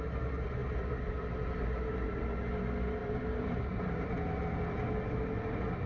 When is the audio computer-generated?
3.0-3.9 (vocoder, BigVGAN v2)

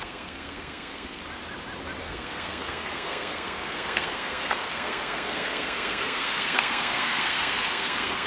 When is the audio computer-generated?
0.0-1.2 (codec, SNAC); 2.0-8.3

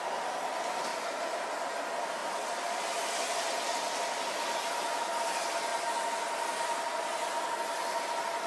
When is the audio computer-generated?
0.9-1.5 (vocoder, BigVGAN v2); 2.2-5.2

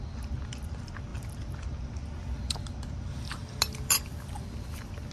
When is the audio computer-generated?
none

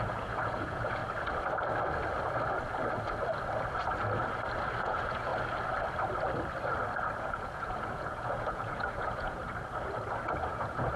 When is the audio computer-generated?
0.0-1.0 (vocoder, Vocos); 4.8-5.3; 7.2-9.4; 10.4-11.0

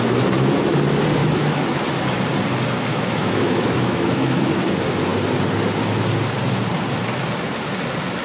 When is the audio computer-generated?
1.2-1.8 (autoencoder, DAC-VAE); 2.9-4.5

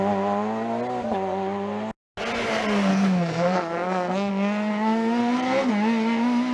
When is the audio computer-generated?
2.9-4.3 (codec, SNAC); 5.2-5.7